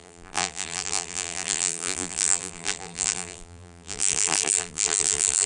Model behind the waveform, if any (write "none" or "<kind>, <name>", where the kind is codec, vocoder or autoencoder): vocoder, BigVGAN v2